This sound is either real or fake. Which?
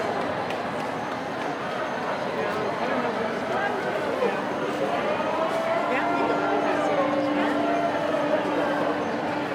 real